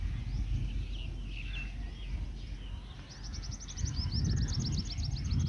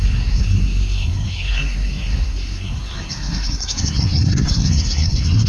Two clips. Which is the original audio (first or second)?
first